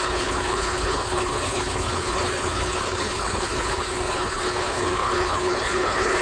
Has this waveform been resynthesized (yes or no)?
yes